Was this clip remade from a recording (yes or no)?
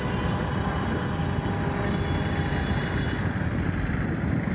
no